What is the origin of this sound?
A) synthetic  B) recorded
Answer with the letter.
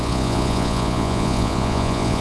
A